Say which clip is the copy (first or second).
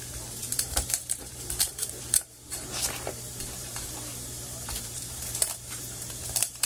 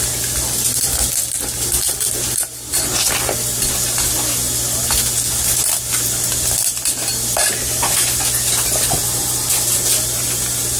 first